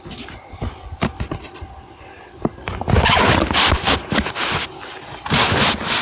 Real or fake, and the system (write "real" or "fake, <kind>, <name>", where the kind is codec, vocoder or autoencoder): real